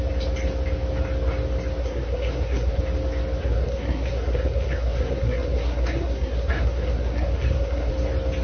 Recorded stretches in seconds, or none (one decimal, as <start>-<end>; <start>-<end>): 0.0-1.8; 2.8-3.4; 7.9-8.4